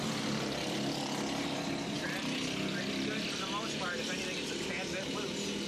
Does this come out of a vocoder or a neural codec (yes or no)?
no